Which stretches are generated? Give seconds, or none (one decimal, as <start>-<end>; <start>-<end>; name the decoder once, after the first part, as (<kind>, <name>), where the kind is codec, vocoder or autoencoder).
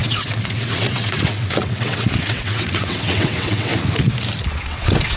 0.0-3.7 (vocoder, WaveNeXt); 4.5-5.2